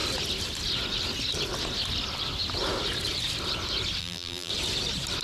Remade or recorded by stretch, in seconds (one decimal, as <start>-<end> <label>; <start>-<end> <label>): 0.0-4.0 recorded; 4.0-4.5 remade; 4.5-5.2 recorded